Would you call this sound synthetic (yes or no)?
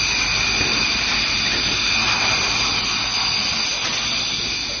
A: no